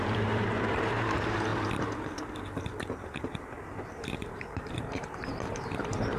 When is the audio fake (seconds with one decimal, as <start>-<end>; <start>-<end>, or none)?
0.0-6.2